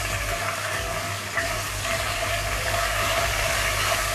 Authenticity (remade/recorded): remade